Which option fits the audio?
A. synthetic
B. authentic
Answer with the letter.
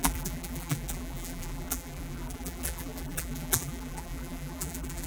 A